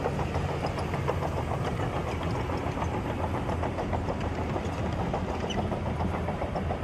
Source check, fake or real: real